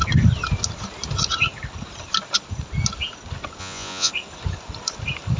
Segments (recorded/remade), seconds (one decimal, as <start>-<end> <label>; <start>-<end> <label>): 0.0-3.6 recorded; 3.6-4.1 remade; 4.1-5.4 recorded